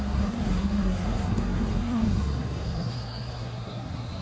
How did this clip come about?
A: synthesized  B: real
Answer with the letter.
A